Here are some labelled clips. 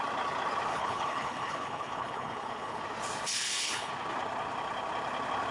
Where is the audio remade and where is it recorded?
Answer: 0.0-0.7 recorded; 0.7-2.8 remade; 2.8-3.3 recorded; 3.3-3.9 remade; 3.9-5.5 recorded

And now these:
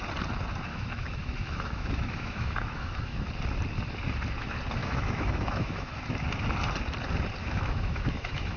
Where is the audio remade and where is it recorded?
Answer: 0.0-0.7 recorded; 0.7-3.3 remade; 3.3-4.8 recorded; 4.8-6.0 remade; 6.0-7.4 recorded; 7.4-8.6 remade

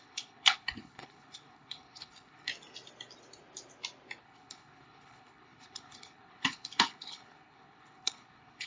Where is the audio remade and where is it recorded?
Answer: 0.0-2.5 remade; 2.5-4.2 recorded; 4.2-8.7 remade

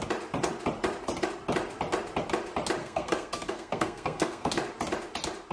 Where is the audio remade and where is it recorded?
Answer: 0.0-2.8 recorded; 2.8-4.5 remade; 4.5-5.5 recorded